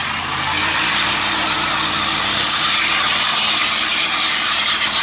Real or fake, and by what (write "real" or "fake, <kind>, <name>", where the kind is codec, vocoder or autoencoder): real